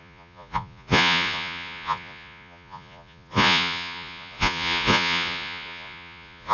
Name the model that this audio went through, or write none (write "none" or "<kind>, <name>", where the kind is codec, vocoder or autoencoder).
vocoder, Vocos